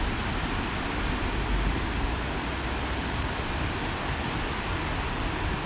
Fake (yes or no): no